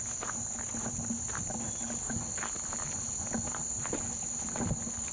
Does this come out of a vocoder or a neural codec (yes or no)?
no